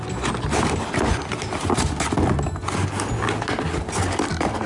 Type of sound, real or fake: real